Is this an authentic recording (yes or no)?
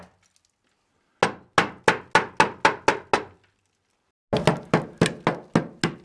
yes